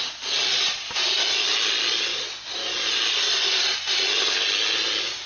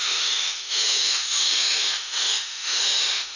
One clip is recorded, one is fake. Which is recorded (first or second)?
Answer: first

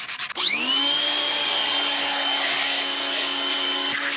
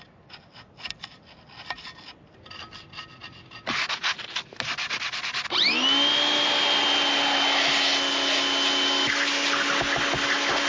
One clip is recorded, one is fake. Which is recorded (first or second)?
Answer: second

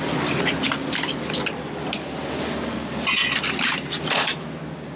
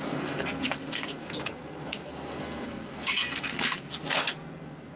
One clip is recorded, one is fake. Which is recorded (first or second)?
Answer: first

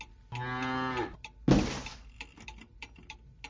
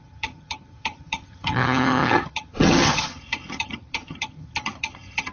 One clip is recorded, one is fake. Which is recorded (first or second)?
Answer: first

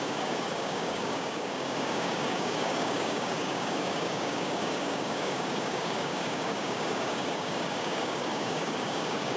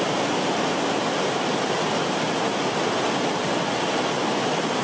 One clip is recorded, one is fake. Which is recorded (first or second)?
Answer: second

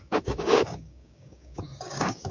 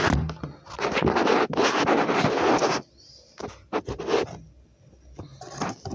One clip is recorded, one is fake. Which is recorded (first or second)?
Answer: second